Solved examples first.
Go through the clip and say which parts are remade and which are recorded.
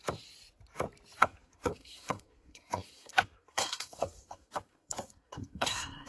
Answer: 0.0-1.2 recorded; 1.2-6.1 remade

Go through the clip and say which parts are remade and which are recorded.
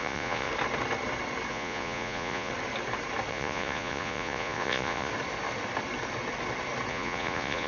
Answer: 0.0-0.5 remade; 0.5-1.5 recorded; 1.5-2.5 remade; 2.5-3.3 recorded; 3.3-5.1 remade; 5.1-6.9 recorded; 6.9-7.7 remade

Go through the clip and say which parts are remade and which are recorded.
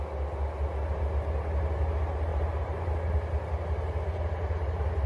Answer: 0.0-2.3 recorded; 2.3-2.9 remade; 2.9-5.1 recorded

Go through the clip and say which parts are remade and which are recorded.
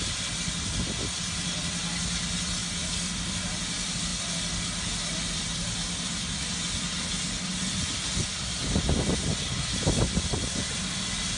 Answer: 0.0-11.4 recorded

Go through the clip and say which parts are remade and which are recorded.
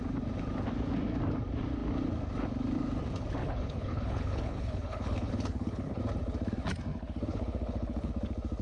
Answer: 0.0-3.4 recorded; 3.4-6.0 remade; 6.0-6.9 recorded; 6.9-8.1 remade; 8.1-8.6 recorded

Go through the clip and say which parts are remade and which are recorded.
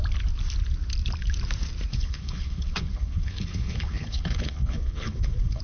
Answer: 0.0-1.9 recorded; 1.9-5.6 remade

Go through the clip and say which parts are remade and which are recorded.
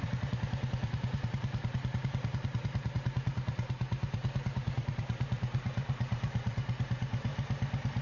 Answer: 0.0-7.3 remade; 7.3-8.0 recorded